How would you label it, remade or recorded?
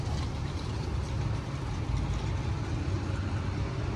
recorded